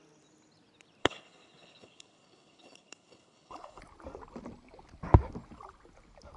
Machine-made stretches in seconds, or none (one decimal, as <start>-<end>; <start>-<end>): 1.0-3.8